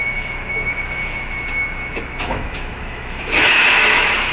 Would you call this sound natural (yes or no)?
no